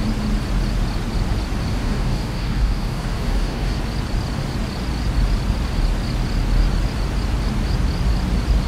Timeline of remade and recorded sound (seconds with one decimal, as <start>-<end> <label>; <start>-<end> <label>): 0.0-1.7 recorded; 1.7-3.8 remade; 3.8-8.7 recorded